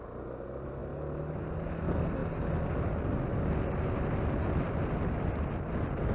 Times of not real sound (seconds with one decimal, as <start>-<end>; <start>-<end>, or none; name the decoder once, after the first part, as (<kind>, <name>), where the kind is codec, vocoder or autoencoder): none